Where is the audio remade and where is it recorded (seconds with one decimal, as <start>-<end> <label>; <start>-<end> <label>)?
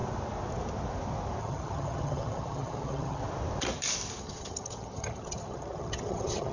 0.0-1.4 recorded; 1.4-3.2 remade; 3.2-4.2 recorded; 4.2-6.5 remade